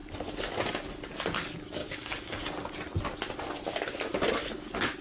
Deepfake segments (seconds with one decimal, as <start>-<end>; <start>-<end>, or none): 1.8-2.4

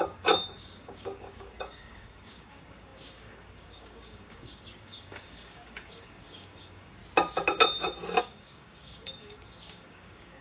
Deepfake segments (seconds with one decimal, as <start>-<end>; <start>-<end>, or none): 0.0-7.0; 8.2-10.4

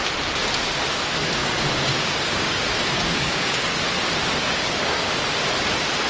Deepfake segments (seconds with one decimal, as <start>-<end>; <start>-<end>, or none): 1.4-3.8; 4.4-5.1

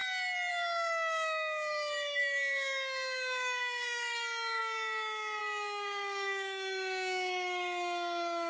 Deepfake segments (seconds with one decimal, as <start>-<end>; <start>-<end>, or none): 0.5-8.5

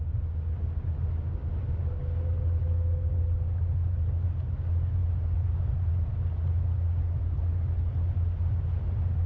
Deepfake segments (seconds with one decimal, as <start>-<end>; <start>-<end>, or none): none

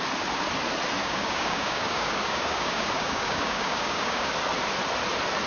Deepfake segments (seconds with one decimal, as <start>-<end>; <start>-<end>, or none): 1.0-4.3